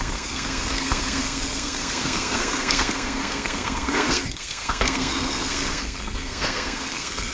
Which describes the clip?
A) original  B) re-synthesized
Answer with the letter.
B